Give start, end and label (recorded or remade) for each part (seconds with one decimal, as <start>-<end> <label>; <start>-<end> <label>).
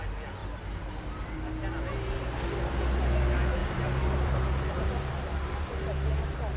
0.0-3.6 recorded; 3.6-5.7 remade; 5.7-6.6 recorded